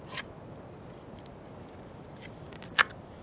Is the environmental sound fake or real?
real